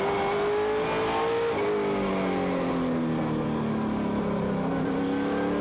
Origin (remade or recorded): recorded